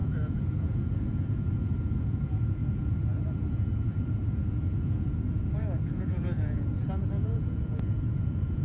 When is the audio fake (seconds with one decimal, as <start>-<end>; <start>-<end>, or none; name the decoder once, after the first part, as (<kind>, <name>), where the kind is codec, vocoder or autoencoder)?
0.0-8.6 (vocoder, Vocos)